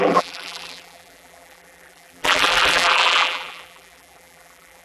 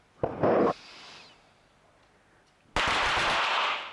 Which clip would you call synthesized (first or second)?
first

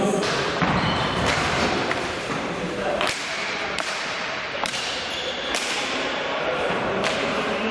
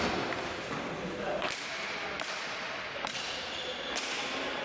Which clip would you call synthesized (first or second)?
first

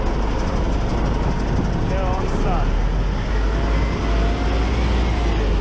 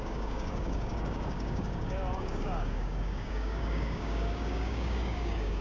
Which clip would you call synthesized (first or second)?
second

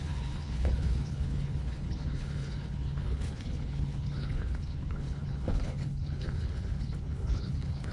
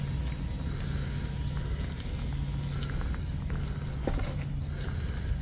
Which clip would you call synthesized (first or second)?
first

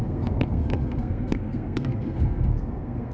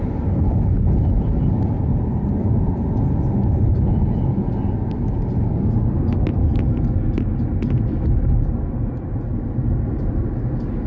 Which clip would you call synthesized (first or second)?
first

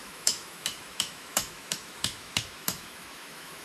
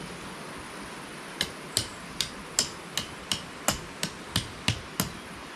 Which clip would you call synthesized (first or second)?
first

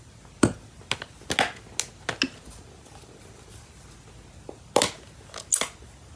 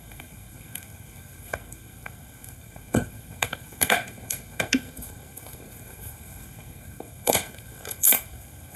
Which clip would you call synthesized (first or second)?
second